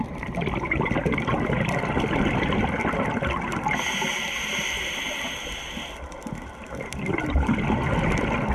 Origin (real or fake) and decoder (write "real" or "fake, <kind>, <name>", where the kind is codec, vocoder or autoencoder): real